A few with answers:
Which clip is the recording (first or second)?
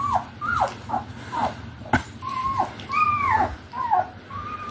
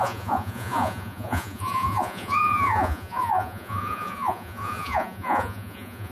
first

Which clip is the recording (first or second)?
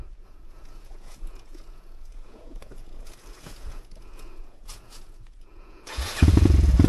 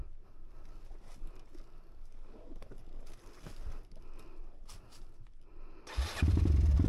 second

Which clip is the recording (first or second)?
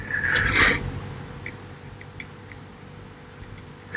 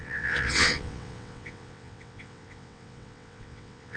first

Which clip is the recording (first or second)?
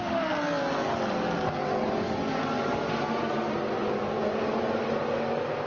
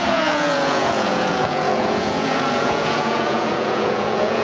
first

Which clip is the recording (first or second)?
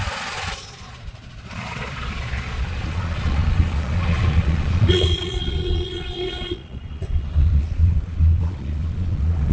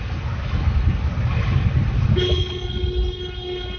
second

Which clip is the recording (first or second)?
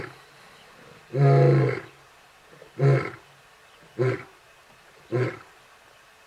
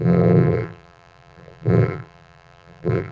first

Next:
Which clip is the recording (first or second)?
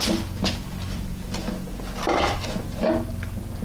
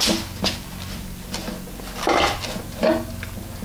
second